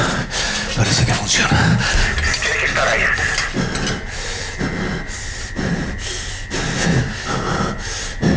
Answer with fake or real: real